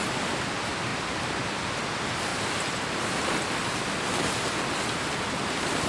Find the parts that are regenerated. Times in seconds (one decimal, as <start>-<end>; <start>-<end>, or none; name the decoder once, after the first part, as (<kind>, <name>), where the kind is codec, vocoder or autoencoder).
none